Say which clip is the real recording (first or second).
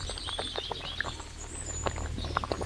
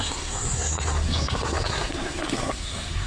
first